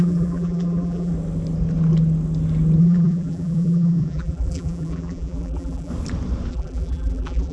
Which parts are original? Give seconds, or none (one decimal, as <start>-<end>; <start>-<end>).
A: 1.1-2.8; 5.9-6.5